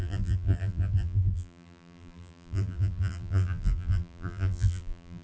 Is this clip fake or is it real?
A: fake